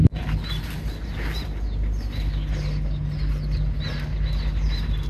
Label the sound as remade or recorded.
recorded